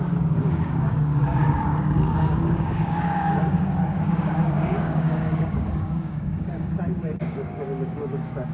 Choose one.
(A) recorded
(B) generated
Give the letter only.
B